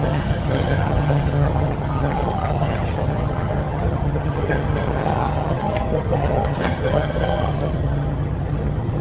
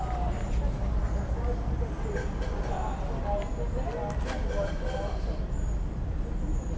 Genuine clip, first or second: second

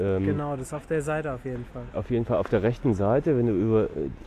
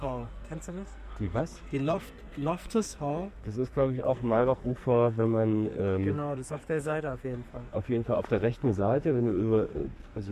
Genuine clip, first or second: first